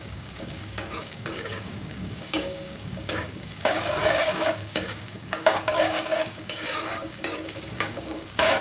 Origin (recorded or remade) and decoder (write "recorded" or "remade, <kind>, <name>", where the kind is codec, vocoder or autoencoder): remade, codec, DAC